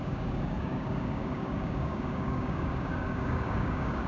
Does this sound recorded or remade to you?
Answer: remade